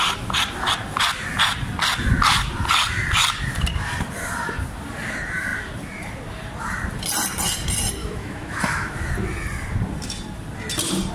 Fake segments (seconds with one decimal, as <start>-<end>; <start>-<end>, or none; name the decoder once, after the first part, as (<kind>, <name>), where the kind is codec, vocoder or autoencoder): 8.0-9.1 (autoencoder, DAC-VAE)

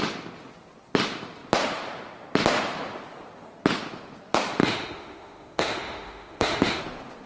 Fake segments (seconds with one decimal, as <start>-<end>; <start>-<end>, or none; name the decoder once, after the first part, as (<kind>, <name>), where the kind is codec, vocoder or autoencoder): 4.6-6.8 (autoencoder, DAC-VAE)

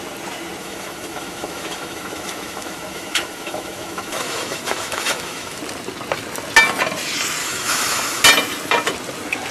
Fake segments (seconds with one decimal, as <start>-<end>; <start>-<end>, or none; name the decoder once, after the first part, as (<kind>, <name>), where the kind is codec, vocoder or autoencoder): 0.6-5.6 (autoencoder, DAC-VAE); 7.4-8.2

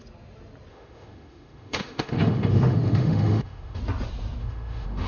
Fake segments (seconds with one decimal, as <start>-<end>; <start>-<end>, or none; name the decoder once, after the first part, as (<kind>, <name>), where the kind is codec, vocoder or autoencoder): 0.7-3.8 (autoencoder, DAC-VAE); 4.4-5.1